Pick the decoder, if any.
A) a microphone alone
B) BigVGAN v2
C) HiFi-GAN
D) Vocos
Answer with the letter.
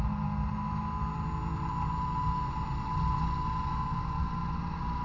A